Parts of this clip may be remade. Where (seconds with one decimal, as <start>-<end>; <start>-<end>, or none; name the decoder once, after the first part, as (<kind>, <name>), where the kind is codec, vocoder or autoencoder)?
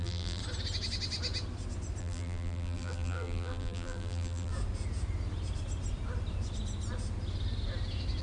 0.0-0.4 (vocoder, BigVGAN v2); 2.0-4.5